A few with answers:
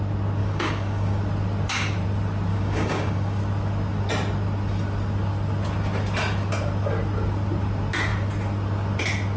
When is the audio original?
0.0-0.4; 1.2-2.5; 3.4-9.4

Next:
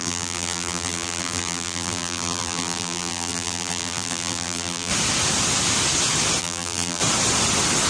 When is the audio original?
4.9-6.4; 7.0-7.9

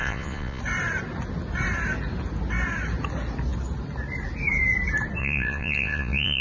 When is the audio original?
0.6-5.2

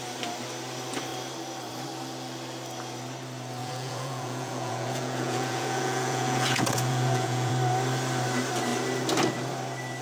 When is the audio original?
0.0-3.6; 7.5-10.0